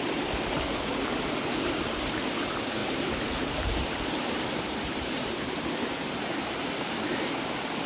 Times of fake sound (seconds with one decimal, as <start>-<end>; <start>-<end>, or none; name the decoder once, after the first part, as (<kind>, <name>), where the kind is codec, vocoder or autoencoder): 2.8-6.7 (vocoder, BigVGAN v2)